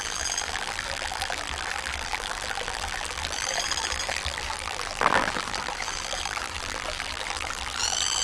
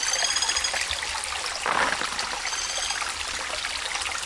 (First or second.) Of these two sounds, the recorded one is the second